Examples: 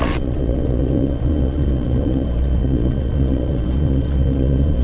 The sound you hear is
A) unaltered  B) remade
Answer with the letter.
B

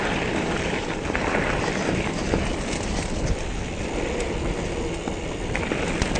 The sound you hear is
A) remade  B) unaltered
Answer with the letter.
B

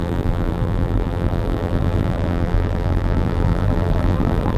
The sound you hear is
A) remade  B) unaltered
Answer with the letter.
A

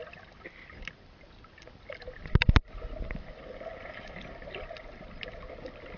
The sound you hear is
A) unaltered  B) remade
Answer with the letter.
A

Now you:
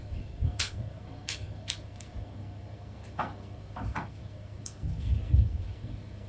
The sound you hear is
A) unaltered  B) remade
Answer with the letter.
B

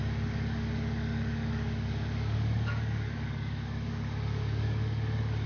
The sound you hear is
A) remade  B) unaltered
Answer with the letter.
A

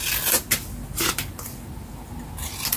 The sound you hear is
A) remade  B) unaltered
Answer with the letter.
B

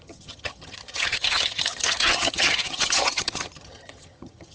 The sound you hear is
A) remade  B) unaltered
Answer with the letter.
A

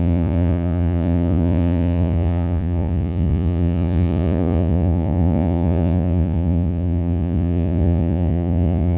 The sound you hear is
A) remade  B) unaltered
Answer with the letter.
A